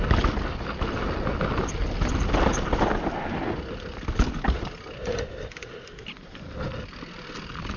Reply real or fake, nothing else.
real